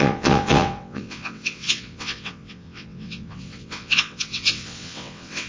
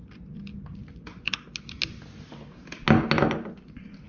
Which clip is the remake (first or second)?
first